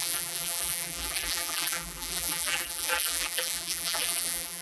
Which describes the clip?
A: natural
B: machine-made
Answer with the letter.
B